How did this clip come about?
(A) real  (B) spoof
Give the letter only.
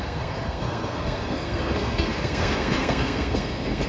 B